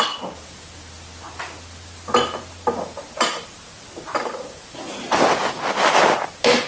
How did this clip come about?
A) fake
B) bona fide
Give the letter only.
B